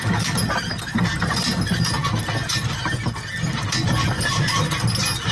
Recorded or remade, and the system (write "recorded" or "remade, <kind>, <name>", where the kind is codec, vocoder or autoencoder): recorded